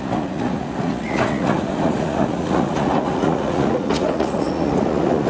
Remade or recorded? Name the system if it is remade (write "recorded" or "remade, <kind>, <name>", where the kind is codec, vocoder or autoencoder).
remade, vocoder, Vocos